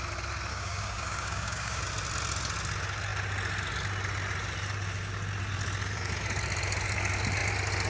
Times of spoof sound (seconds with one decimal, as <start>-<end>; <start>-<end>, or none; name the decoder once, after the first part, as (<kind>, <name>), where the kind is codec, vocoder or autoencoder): 0.5-1.8 (codec, DAC)